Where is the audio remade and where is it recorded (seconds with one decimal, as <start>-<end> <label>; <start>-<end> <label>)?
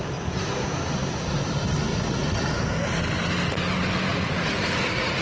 0.0-1.9 recorded; 1.9-2.6 remade; 2.6-4.1 recorded; 4.1-5.2 remade